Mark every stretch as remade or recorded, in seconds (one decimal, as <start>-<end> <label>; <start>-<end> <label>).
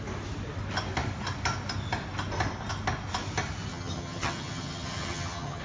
0.0-3.7 recorded; 3.7-5.6 remade